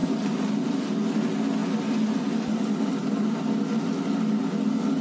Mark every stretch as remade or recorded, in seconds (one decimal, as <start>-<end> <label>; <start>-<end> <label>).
0.0-0.9 remade; 0.9-5.0 recorded